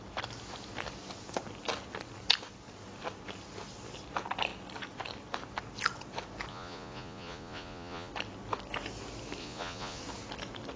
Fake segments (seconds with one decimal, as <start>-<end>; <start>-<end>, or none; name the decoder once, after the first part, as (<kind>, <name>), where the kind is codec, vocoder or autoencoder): 6.5-8.1 (vocoder, Vocos); 9.4-10.0